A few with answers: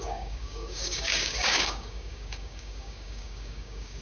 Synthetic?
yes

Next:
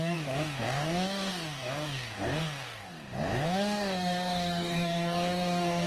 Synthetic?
yes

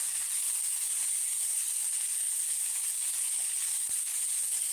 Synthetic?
yes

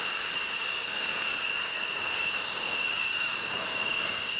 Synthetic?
yes